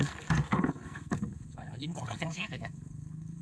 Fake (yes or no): yes